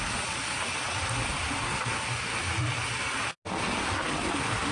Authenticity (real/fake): real